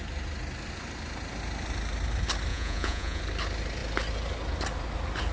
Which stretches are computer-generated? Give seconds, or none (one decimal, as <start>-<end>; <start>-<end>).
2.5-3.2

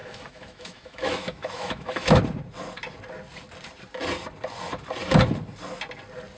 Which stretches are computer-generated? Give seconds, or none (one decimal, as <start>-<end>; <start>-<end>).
0.0-2.2

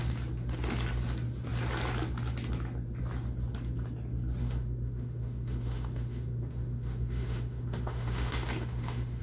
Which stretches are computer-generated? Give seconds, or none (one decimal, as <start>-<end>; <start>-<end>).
4.4-9.2

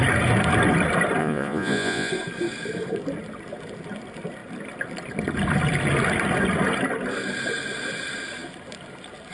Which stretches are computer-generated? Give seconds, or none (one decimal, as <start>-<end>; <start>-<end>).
1.2-2.1

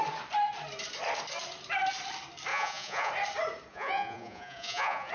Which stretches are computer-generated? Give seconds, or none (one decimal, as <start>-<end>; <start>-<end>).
2.5-3.1; 3.7-5.1

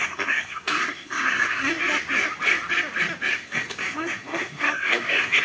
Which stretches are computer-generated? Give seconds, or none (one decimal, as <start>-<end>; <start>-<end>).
0.0-1.8; 3.3-5.4

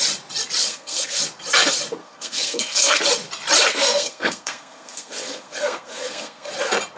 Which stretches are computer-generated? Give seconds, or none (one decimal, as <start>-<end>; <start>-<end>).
0.6-1.2; 2.0-3.0; 3.7-6.5